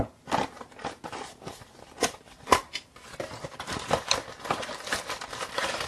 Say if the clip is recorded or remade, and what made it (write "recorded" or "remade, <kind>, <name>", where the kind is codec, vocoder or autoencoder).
recorded